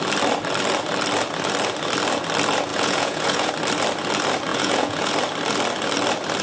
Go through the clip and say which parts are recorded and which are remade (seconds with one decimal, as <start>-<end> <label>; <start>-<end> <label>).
0.0-2.7 recorded; 2.7-3.5 remade; 3.5-4.5 recorded; 4.5-5.1 remade; 5.1-6.4 recorded